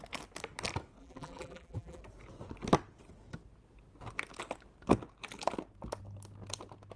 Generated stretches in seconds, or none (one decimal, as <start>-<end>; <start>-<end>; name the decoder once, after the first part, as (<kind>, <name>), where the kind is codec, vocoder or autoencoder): 1.0-2.0 (vocoder, BigVGAN v2)